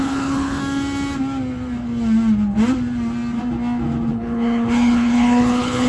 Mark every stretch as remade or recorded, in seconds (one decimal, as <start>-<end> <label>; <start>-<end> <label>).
0.0-0.6 remade; 0.6-4.1 recorded; 4.1-5.9 remade